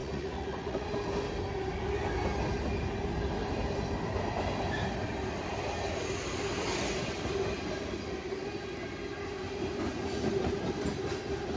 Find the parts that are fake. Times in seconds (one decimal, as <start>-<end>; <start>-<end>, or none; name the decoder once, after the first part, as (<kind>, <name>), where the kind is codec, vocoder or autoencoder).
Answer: 0.0-0.9 (vocoder, Vocos)